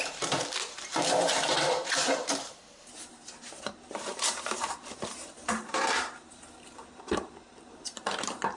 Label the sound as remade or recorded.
remade